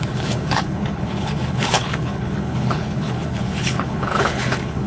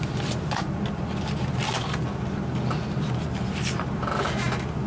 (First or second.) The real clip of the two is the second